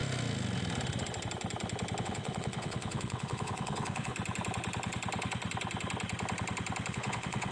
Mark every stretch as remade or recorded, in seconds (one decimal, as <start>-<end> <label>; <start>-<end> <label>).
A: 0.0-2.0 recorded; 2.0-4.1 remade; 4.1-6.9 recorded; 6.9-7.5 remade